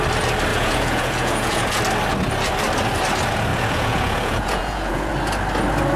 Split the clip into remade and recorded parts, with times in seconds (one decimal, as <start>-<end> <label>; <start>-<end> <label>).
0.0-0.5 recorded; 0.5-1.8 remade; 1.8-3.5 recorded; 3.5-5.1 remade; 5.1-6.0 recorded